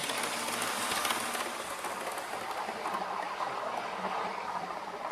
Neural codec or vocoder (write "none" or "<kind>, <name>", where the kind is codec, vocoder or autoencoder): none